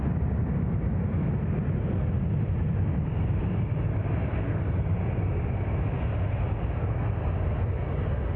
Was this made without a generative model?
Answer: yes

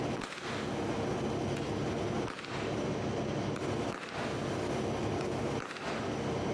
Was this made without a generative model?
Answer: yes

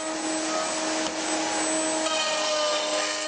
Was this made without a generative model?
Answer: yes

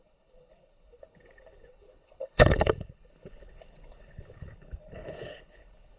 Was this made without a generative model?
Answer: no